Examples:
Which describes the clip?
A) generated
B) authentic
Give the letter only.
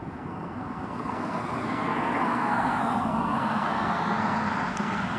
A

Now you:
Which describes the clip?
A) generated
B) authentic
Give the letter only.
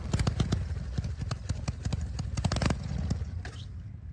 A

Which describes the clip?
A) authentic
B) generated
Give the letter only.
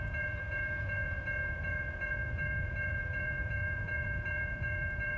B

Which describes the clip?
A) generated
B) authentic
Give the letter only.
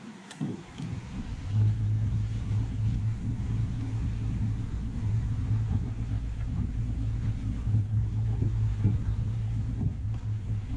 A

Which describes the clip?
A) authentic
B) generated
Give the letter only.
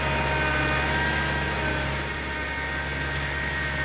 A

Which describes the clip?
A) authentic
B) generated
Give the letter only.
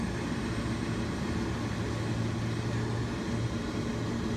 A